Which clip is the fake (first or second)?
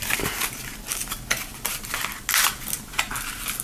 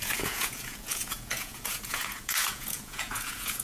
second